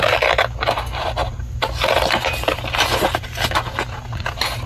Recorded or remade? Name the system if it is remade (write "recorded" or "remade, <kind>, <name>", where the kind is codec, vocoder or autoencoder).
recorded